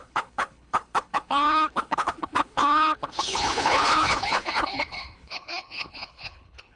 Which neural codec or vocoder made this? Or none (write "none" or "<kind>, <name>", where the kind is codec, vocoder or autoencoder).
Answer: codec, HILCodec